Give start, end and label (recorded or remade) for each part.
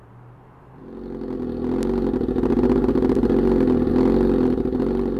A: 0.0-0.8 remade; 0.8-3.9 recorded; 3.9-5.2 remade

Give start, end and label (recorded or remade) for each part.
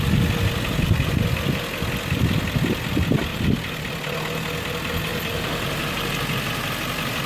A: 0.0-3.3 recorded; 3.3-3.9 remade; 3.9-5.1 recorded; 5.1-6.1 remade; 6.1-7.3 recorded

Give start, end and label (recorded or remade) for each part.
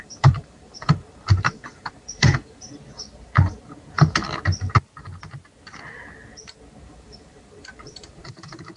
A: 0.0-2.7 remade; 2.7-6.8 recorded; 6.8-8.8 remade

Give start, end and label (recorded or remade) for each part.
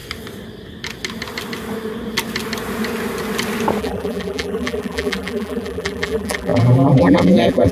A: 0.0-3.8 recorded; 3.8-7.7 remade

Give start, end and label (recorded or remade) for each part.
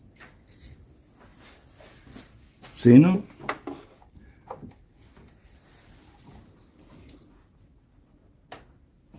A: 0.0-9.2 recorded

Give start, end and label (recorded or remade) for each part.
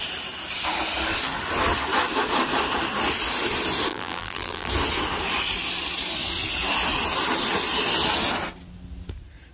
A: 0.0-3.9 recorded; 3.9-4.7 remade; 4.7-9.5 recorded